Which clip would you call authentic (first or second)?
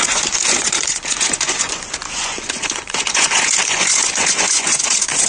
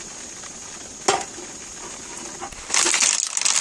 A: second